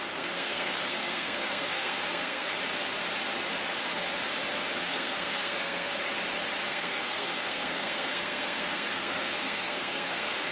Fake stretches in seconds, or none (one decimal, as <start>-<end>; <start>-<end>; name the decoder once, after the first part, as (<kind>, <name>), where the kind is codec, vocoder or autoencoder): 0.0-2.5 (codec, SNAC); 4.8-5.9; 6.7-10.5